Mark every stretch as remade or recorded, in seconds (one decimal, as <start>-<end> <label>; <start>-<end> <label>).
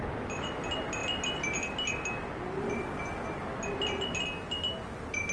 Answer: 0.0-5.3 recorded